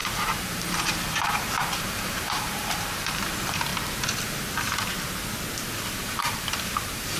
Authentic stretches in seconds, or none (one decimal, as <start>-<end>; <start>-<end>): 3.7-6.0